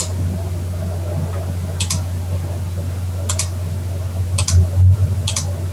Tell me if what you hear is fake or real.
real